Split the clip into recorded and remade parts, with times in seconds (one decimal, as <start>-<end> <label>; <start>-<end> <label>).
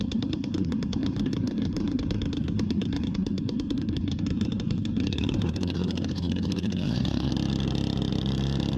0.0-7.3 remade; 7.3-8.8 recorded